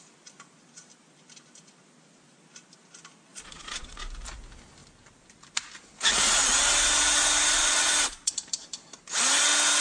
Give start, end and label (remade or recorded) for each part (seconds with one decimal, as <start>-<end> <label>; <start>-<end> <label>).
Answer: 0.0-3.3 recorded; 3.3-4.0 remade; 4.0-7.6 recorded; 7.6-8.3 remade; 8.3-9.8 recorded

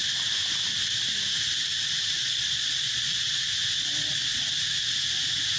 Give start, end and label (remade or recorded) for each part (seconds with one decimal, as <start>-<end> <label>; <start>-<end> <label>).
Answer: 0.0-2.2 recorded; 2.2-3.1 remade; 3.1-3.8 recorded; 3.8-4.5 remade; 4.5-5.6 recorded